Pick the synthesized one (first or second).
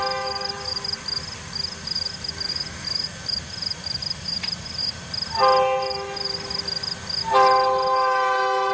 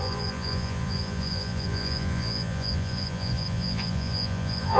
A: second